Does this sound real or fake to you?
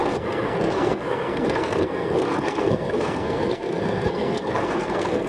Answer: fake